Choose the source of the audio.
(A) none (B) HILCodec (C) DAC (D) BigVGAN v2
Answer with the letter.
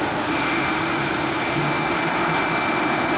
A